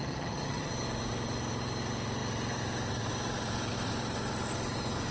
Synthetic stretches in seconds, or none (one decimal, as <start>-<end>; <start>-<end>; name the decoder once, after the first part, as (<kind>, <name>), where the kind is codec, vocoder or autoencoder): 0.0-0.7 (vocoder, HiFi-GAN)